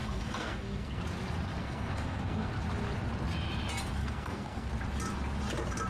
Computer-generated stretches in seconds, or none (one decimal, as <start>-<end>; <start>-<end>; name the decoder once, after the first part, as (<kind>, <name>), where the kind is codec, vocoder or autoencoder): 0.0-1.0 (codec, SNAC); 1.6-2.5; 4.0-4.7

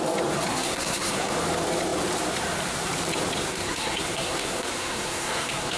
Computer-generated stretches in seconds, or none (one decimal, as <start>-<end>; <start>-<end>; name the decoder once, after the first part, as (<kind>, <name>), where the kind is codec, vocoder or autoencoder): 0.5-1.3 (codec, SNAC); 3.5-5.8

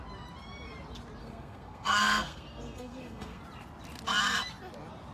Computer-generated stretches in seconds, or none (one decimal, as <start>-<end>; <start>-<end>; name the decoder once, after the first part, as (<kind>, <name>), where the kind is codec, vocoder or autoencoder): 1.2-3.4 (codec, SNAC)

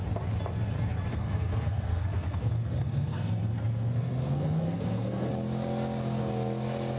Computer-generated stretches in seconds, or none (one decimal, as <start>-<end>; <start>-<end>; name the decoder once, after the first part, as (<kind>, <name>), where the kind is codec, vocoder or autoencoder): 1.1-5.3 (codec, SNAC)

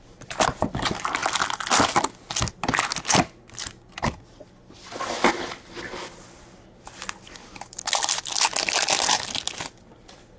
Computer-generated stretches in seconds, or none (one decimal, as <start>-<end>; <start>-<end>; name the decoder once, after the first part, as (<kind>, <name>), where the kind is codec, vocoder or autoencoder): none